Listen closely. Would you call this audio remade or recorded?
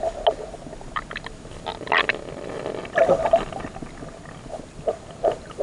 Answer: recorded